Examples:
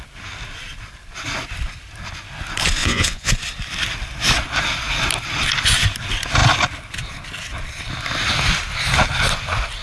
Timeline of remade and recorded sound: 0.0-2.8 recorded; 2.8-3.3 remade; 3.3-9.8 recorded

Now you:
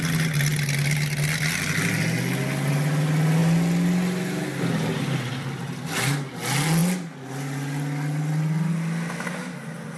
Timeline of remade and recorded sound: 0.0-10.0 recorded

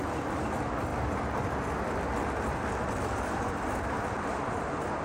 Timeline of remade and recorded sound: 0.0-5.0 recorded

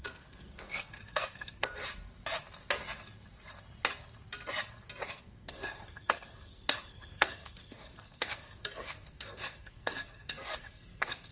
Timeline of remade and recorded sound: 0.0-1.8 remade; 1.8-5.1 recorded; 5.1-11.3 remade

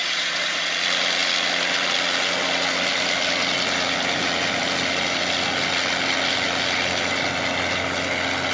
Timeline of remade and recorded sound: 0.0-0.7 remade; 0.7-8.5 recorded

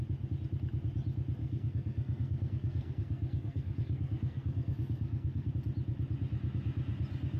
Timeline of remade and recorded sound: 0.0-1.4 recorded; 1.4-5.5 remade; 5.5-7.4 recorded

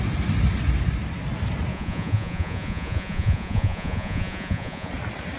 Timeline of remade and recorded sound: 0.0-1.7 recorded; 1.7-4.9 remade; 4.9-5.4 recorded